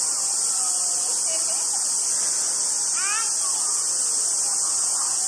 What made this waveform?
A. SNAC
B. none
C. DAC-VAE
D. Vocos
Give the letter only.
B